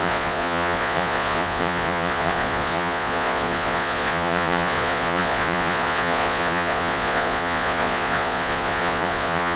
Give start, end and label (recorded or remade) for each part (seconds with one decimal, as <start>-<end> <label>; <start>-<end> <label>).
0.0-9.6 remade